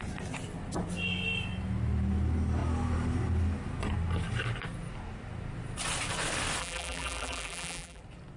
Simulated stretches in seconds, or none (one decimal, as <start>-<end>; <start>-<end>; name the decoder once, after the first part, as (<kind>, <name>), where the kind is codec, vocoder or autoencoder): 6.6-8.0 (vocoder, BigVGAN v2)

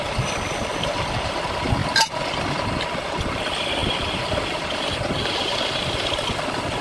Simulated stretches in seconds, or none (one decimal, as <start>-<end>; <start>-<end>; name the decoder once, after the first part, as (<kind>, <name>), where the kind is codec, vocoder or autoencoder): none